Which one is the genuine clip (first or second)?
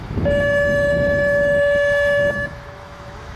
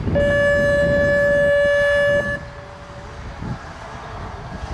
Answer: second